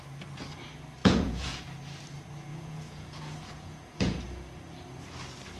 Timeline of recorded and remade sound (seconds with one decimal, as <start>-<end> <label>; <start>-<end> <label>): 0.0-1.0 recorded; 1.0-1.6 remade; 1.6-2.5 recorded; 2.5-4.2 remade; 4.2-5.6 recorded